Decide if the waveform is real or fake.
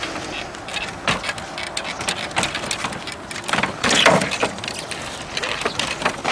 real